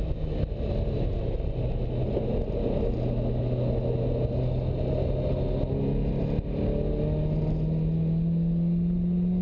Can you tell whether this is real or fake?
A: real